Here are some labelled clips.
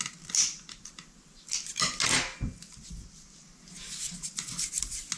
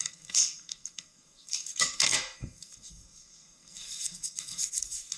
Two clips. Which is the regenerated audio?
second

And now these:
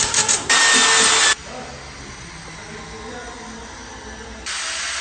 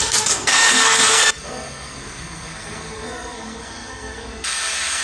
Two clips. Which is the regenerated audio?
second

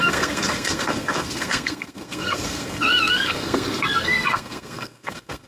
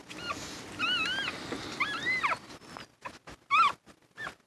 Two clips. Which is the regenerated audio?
first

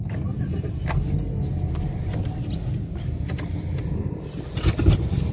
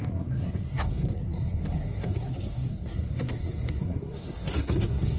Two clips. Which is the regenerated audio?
second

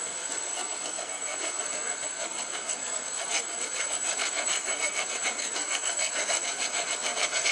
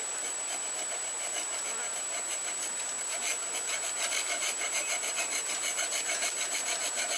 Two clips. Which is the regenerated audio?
first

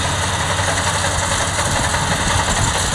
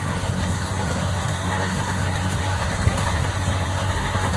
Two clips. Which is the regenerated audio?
second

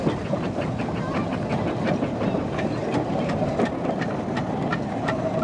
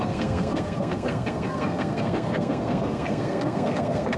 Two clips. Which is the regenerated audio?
second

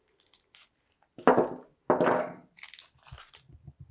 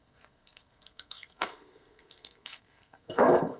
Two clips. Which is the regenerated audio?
second